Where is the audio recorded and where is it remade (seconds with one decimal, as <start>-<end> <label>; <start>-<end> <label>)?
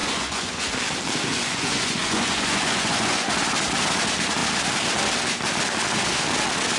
0.0-0.7 remade; 0.7-1.3 recorded; 1.3-3.3 remade; 3.3-6.8 recorded